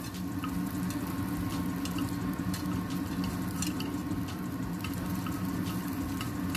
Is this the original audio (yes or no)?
yes